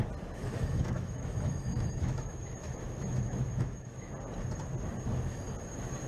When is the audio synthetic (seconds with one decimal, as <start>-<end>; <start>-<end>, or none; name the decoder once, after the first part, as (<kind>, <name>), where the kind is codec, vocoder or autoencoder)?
0.4-4.1 (autoencoder, DAC-VAE)